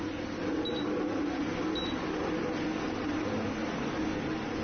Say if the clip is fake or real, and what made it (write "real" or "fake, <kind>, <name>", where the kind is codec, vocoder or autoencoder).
real